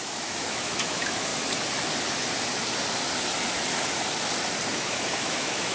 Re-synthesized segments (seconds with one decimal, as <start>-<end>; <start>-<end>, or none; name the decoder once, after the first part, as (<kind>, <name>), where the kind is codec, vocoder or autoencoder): 0.0-1.3 (autoencoder, DAC-VAE); 4.7-5.7